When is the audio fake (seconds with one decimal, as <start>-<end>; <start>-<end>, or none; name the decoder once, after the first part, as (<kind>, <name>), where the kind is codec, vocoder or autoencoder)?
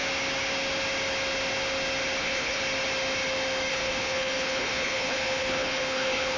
2.2-2.6 (codec, HILCodec); 3.7-6.4